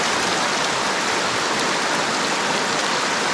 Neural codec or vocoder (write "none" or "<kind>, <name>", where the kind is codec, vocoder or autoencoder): none